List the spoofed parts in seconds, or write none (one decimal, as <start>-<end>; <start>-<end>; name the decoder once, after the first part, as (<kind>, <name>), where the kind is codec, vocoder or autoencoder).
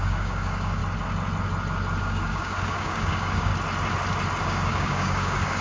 0.0-0.8 (codec, DAC); 2.0-3.5; 4.4-5.6